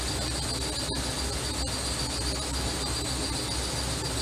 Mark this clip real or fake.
real